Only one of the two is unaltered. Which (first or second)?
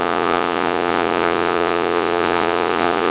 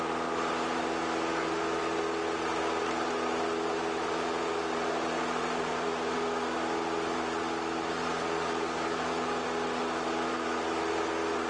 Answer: second